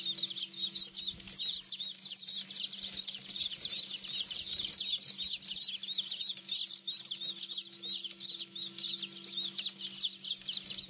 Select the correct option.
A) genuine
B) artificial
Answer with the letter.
A